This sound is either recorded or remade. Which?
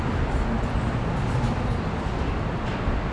recorded